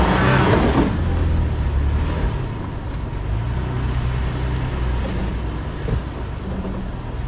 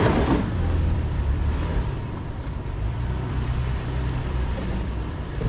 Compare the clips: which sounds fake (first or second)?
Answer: second